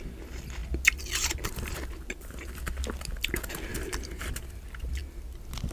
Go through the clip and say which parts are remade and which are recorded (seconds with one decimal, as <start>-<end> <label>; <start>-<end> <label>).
0.0-3.7 recorded; 3.7-4.3 remade; 4.3-5.7 recorded